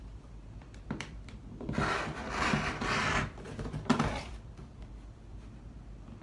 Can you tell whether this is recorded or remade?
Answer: remade